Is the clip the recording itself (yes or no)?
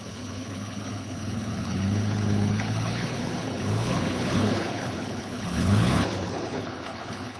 no